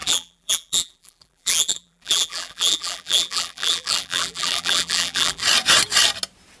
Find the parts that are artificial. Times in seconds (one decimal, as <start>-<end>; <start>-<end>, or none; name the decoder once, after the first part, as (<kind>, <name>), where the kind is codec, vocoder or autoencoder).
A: 0.0-5.4 (vocoder, BigVGAN v2)